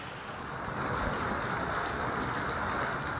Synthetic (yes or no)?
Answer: no